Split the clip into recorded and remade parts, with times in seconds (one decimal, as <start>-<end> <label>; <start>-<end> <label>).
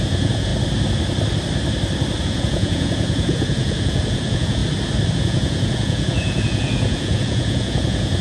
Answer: 0.0-0.5 remade; 0.5-2.2 recorded; 2.2-4.6 remade; 4.6-5.1 recorded; 5.1-8.2 remade